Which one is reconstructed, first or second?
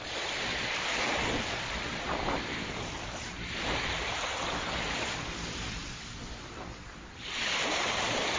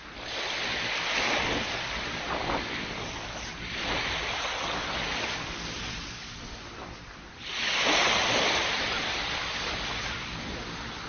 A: first